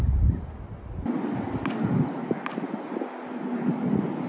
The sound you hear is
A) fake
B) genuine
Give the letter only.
B